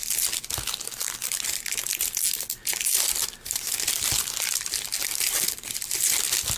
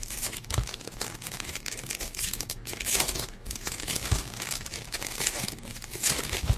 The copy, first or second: second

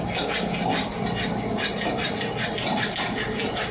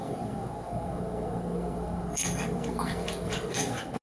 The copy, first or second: second